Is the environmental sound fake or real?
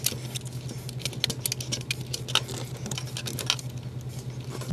real